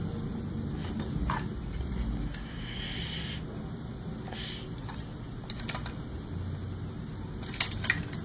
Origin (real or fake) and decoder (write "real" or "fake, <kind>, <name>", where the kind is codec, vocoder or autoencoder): real